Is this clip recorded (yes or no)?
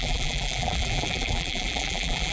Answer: no